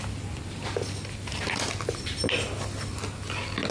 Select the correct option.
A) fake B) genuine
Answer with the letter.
B